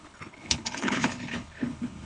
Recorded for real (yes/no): no